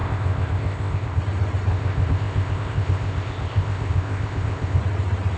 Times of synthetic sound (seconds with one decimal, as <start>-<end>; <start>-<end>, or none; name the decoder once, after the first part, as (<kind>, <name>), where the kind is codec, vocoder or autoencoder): 0.0-1.2 (codec, ZipCodec); 1.7-4.8